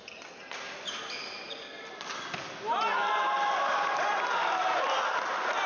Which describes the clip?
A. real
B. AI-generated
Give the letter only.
A